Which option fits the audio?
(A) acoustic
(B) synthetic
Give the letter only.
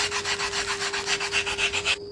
A